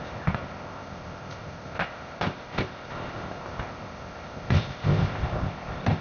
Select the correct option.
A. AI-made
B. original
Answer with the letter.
A